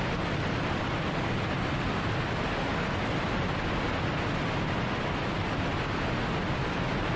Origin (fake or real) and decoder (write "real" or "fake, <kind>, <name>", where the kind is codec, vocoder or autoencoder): real